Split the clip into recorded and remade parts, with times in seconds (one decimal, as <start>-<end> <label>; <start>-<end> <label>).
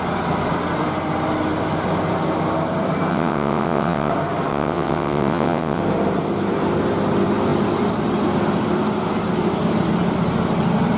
0.0-3.1 recorded; 3.1-4.1 remade; 4.1-4.5 recorded; 4.5-5.8 remade; 5.8-11.0 recorded